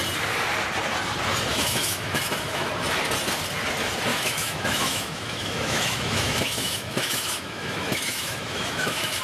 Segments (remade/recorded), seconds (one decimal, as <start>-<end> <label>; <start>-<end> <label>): 0.0-1.5 recorded; 1.5-2.7 remade; 2.7-4.1 recorded; 4.1-9.2 remade

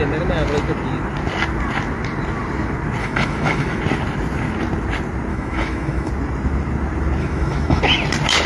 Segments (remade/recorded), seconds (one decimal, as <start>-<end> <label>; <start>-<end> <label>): 0.0-3.0 recorded; 3.0-3.8 remade; 3.8-5.3 recorded; 5.3-6.1 remade; 6.1-7.2 recorded; 7.2-7.8 remade; 7.8-8.5 recorded

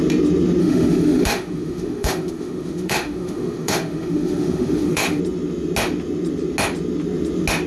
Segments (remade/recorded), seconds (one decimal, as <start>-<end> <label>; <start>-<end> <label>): 0.0-0.6 recorded; 0.6-5.2 remade; 5.2-7.7 recorded

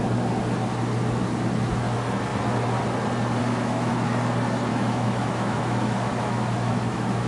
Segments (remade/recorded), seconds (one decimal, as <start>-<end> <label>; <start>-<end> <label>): 0.0-3.4 recorded; 3.4-3.9 remade; 3.9-4.7 recorded; 4.7-7.3 remade

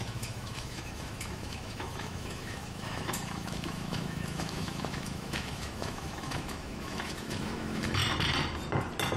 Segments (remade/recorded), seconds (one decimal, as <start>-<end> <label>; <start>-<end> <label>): 0.0-8.0 remade; 8.0-9.2 recorded

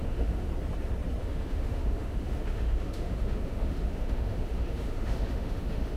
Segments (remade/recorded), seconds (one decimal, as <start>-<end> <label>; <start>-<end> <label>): 0.0-0.5 remade; 0.5-1.2 recorded; 1.2-6.0 remade

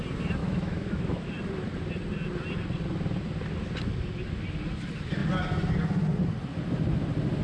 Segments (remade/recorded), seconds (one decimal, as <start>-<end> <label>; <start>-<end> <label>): 0.0-0.4 recorded; 0.4-1.3 remade; 1.3-7.4 recorded

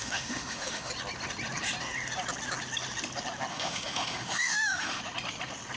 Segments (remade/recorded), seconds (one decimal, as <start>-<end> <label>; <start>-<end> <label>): 0.0-0.9 remade; 0.9-3.5 recorded; 3.5-5.0 remade; 5.0-5.8 recorded